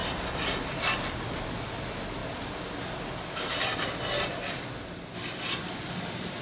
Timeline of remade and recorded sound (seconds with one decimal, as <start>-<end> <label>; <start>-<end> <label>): 0.0-6.4 recorded